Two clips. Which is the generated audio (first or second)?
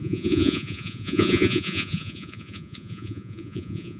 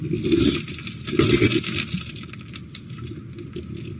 first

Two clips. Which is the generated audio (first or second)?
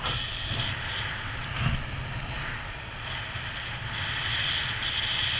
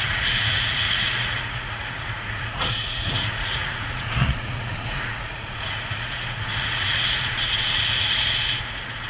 second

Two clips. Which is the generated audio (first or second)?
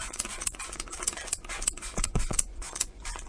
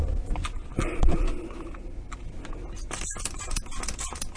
first